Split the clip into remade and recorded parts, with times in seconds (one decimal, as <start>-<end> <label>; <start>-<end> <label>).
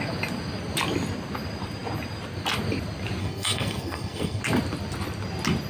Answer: 0.0-3.2 recorded; 3.2-4.4 remade; 4.4-5.7 recorded